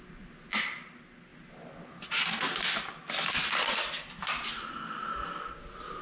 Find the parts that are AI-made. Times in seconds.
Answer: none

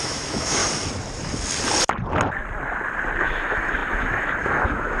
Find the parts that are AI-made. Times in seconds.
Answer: 0.0-0.6 (autoencoder, DAC-VAE); 3.2-5.0

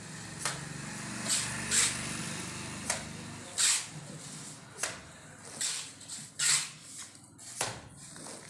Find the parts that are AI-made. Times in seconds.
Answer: none